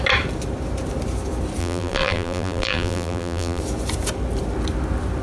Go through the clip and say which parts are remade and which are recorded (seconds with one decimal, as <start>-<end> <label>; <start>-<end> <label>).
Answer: 0.0-1.6 recorded; 1.6-3.6 remade; 3.6-5.2 recorded